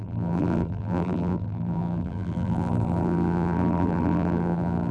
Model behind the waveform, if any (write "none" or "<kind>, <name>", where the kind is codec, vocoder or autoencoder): vocoder, BigVGAN v2